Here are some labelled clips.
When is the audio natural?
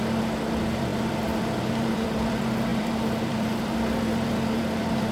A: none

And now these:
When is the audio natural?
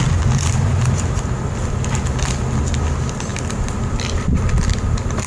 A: 0.0-3.3; 4.7-5.3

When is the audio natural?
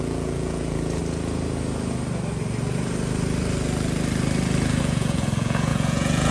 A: 1.0-4.8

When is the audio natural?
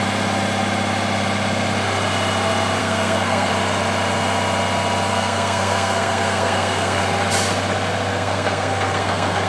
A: 0.0-2.8; 3.5-5.1; 7.0-8.1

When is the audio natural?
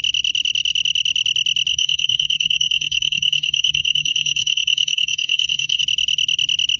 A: 0.0-1.7; 5.8-6.8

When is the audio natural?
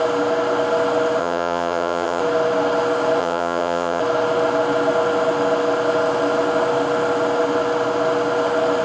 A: 0.0-1.2; 2.2-3.2; 4.0-8.8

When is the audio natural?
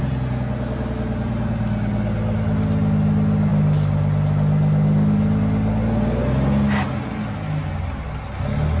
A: 0.0-8.8